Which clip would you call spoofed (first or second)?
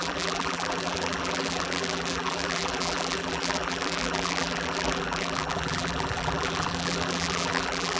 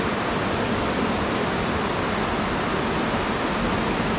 first